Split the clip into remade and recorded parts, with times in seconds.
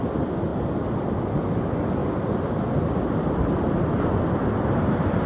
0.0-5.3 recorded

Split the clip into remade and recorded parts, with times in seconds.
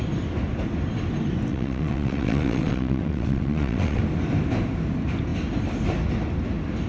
0.0-1.5 recorded; 1.5-4.0 remade; 4.0-6.9 recorded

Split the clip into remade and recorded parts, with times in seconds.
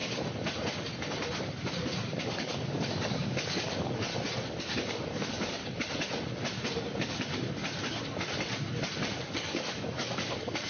0.0-2.2 recorded; 2.2-4.1 remade; 4.1-4.6 recorded; 4.6-5.6 remade; 5.6-9.1 recorded; 9.1-10.7 remade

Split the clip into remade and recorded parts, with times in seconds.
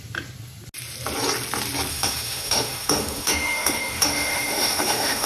0.0-1.9 recorded; 1.9-5.3 remade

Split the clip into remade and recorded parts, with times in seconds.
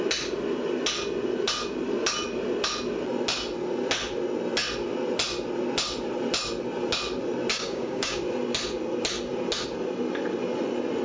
0.0-7.5 recorded; 7.5-8.2 remade; 8.2-11.0 recorded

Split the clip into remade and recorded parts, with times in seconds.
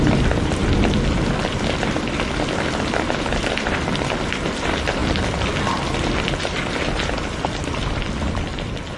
0.0-0.6 remade; 0.6-3.1 recorded; 3.1-5.0 remade; 5.0-5.6 recorded; 5.6-8.5 remade; 8.5-9.0 recorded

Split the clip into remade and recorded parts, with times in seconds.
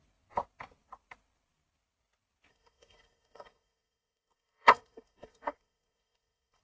0.0-2.5 recorded; 2.5-6.6 remade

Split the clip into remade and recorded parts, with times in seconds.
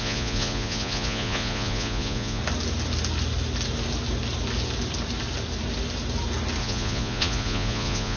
0.0-2.4 remade; 2.4-6.6 recorded; 6.6-8.2 remade